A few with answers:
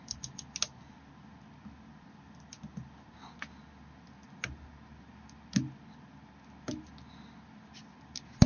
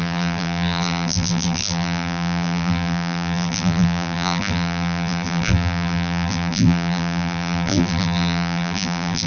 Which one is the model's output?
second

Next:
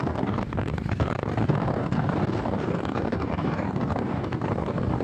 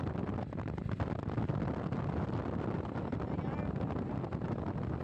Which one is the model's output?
first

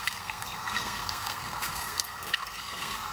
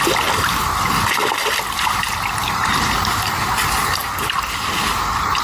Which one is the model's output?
first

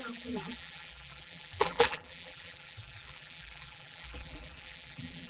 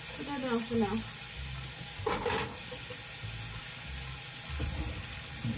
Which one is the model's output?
first